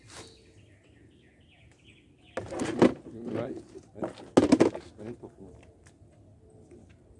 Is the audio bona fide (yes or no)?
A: yes